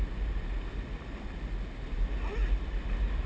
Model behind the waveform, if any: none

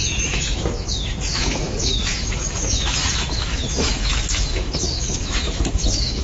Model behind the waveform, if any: autoencoder, DAC-VAE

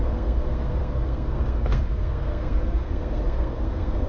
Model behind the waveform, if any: codec, SNAC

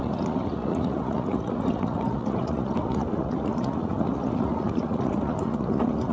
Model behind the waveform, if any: vocoder, Vocos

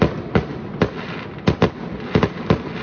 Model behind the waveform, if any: none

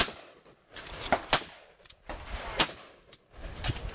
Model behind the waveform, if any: none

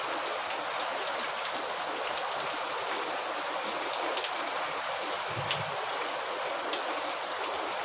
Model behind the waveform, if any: none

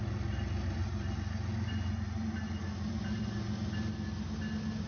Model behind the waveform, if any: none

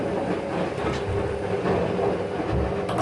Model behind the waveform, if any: none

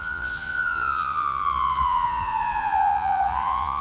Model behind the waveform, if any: vocoder, Vocos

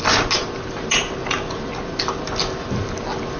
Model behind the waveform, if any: none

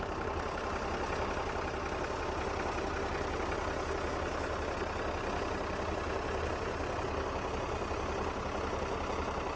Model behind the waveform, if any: none